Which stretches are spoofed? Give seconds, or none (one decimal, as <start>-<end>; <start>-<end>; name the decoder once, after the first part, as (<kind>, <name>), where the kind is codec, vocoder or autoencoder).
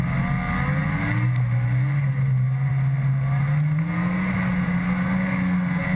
none